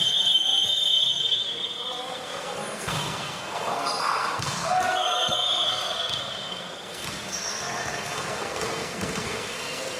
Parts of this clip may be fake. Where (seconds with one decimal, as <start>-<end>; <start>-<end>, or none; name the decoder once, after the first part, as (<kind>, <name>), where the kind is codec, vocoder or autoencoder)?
0.0-10.0 (codec, SNAC)